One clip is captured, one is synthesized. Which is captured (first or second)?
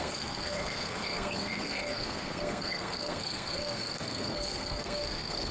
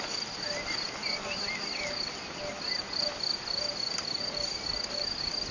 second